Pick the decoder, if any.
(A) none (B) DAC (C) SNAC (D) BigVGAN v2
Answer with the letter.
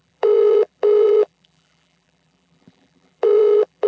D